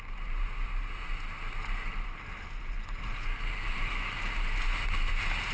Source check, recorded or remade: recorded